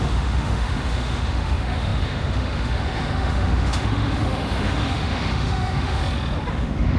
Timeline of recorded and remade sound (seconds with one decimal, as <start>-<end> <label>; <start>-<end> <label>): 0.0-6.0 remade; 6.0-6.5 recorded; 6.5-7.0 remade